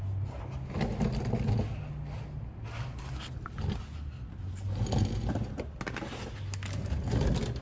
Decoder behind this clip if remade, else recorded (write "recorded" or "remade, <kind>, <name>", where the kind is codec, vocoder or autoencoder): recorded